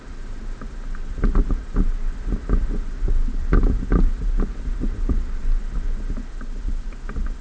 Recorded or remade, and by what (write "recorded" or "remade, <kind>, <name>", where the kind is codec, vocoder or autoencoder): recorded